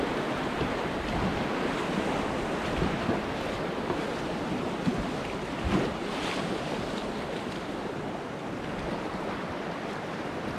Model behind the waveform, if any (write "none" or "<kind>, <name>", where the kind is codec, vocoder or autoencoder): none